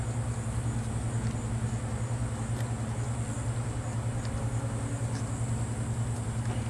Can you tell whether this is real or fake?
real